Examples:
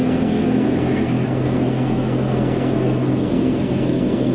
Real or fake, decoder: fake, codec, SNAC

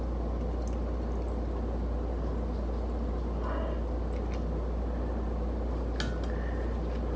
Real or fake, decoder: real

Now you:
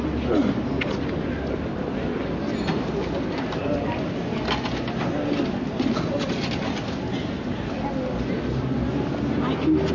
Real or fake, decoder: real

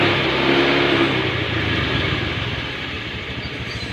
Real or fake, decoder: fake, vocoder, BigVGAN v2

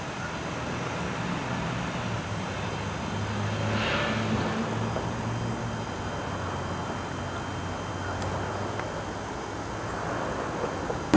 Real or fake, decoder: real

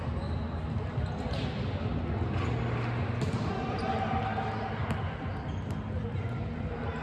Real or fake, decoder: real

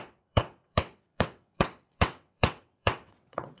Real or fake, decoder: fake, vocoder, WaveNeXt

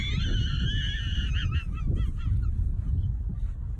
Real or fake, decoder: real